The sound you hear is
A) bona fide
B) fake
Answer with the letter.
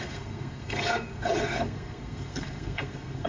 B